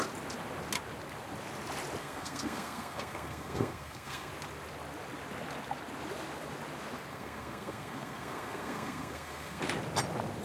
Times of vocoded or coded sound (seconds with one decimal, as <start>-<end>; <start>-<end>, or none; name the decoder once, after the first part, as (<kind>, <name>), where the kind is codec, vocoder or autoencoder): 2.0-4.3 (codec, SNAC); 7.1-9.6

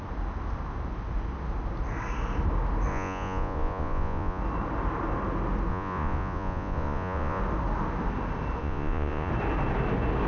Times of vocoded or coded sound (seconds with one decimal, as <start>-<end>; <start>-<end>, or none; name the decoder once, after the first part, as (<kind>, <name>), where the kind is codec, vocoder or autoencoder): 2.9-4.4 (vocoder, Vocos); 5.7-7.4; 8.6-9.3

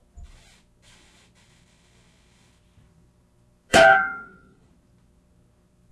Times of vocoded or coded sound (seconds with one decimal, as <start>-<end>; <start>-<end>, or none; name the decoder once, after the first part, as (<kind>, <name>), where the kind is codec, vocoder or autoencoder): 3.7-4.7 (codec, SNAC)

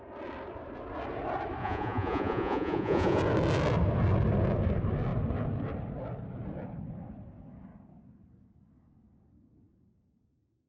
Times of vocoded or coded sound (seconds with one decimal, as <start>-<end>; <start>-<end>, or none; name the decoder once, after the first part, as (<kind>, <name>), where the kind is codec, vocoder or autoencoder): 1.6-3.2 (vocoder, Vocos)

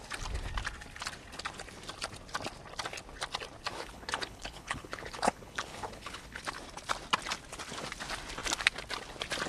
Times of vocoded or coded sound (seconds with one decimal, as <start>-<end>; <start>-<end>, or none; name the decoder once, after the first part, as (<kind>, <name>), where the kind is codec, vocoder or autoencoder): 3.7-6.4 (codec, HILCodec)

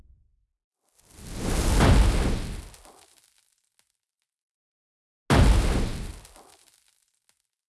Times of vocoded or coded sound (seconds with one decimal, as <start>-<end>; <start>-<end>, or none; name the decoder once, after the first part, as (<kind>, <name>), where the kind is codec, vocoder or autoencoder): none

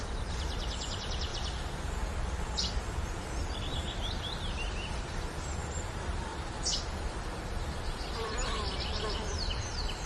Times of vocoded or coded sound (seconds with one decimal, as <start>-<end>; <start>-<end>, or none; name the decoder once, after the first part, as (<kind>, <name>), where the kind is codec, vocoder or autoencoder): 0.0-1.3 (vocoder, BigVGAN v2); 3.6-6.3; 6.9-8.4; 9.4-10.1